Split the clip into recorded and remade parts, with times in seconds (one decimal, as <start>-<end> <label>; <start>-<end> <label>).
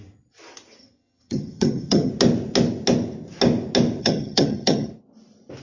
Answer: 0.0-0.8 recorded; 0.8-2.1 remade; 2.1-4.0 recorded; 4.0-4.9 remade; 4.9-5.6 recorded